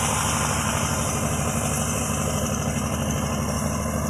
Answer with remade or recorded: recorded